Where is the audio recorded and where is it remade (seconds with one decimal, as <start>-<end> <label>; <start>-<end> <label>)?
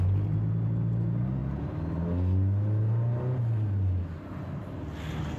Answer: 0.0-5.4 recorded